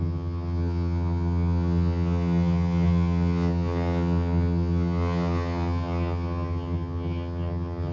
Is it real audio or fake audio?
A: fake